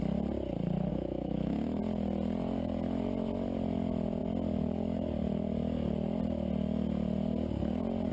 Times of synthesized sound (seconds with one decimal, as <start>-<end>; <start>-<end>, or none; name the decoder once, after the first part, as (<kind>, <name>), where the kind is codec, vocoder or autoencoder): 0.9-1.8 (autoencoder, DAC-VAE)